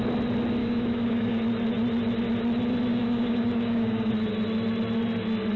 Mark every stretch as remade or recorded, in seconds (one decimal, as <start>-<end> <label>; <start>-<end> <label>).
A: 0.0-0.6 recorded; 0.6-1.4 remade; 1.4-2.9 recorded; 2.9-4.1 remade; 4.1-5.6 recorded